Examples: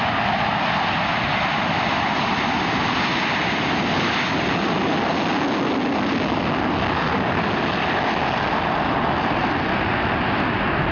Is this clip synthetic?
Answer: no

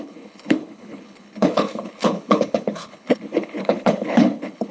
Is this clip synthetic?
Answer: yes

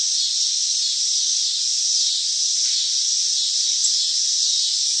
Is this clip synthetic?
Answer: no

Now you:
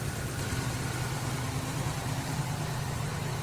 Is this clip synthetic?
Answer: no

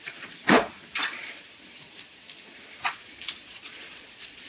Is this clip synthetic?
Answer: yes